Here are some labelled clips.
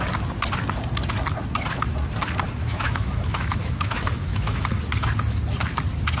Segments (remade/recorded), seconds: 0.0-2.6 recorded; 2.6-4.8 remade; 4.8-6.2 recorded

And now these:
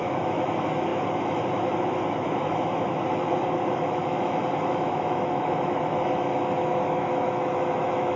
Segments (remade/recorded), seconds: 0.0-8.2 remade